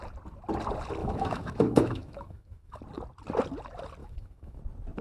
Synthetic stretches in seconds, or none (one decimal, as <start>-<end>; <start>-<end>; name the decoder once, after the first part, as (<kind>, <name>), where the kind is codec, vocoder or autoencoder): 1.0-2.8 (autoencoder, DAC-VAE); 4.0-4.6